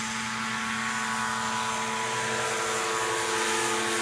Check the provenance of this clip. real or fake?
real